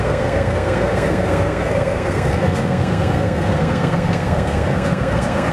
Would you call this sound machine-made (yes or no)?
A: yes